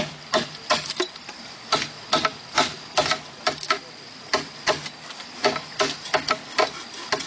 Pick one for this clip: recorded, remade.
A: recorded